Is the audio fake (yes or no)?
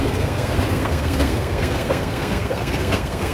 yes